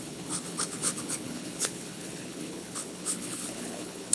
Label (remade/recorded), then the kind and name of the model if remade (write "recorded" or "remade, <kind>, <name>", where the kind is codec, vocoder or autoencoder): remade, codec, HILCodec